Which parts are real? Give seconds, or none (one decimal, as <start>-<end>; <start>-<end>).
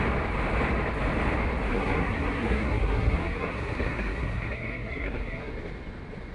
0.0-1.7; 5.5-6.3